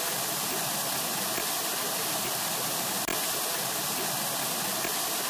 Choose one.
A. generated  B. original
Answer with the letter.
B